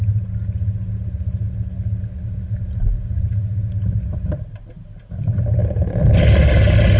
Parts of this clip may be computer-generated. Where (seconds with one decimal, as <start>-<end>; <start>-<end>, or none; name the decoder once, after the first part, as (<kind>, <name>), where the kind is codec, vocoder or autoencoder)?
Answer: none